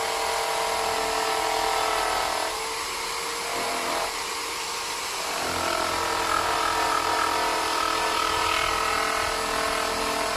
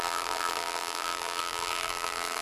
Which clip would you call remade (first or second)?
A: second